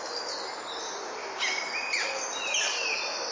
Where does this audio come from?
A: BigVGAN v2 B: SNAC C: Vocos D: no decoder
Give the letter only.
D